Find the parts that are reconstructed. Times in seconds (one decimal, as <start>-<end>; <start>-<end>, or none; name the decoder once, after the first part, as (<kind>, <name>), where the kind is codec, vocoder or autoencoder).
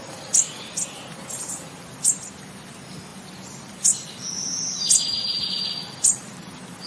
none